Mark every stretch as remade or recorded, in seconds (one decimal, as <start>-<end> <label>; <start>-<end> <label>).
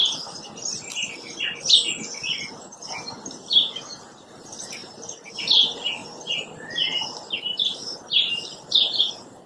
0.0-2.6 recorded; 2.6-9.5 remade